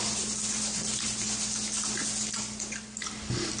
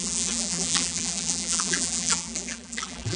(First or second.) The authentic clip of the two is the first